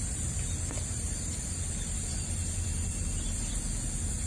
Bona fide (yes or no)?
yes